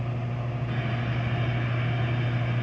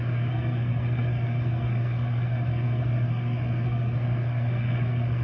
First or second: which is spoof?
second